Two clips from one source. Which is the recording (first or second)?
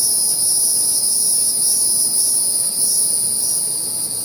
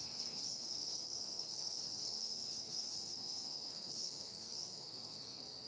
first